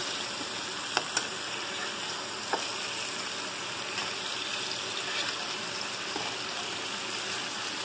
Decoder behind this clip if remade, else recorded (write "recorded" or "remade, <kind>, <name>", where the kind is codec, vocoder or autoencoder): recorded